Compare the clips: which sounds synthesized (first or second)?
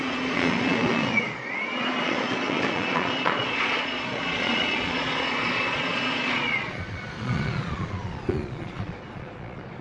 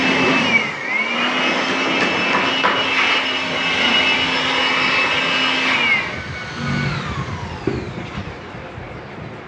first